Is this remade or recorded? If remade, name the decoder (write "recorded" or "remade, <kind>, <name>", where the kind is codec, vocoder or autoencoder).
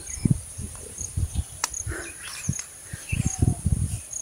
remade, vocoder, BigVGAN v2